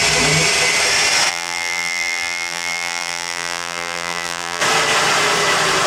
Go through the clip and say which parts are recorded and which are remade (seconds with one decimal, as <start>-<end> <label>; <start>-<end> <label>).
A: 0.0-1.3 recorded; 1.3-4.6 remade; 4.6-5.9 recorded